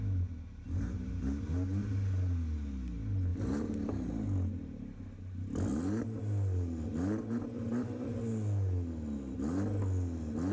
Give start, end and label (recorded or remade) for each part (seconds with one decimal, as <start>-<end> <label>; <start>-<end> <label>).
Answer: 0.0-3.3 recorded; 3.3-4.1 remade; 4.1-10.5 recorded